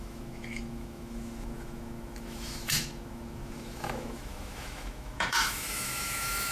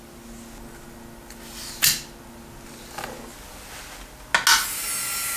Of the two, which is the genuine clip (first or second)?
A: second